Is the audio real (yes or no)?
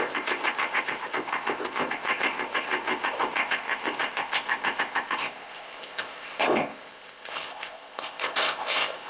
no